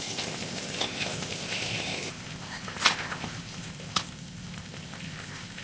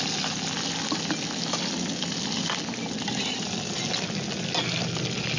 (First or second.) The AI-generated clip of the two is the first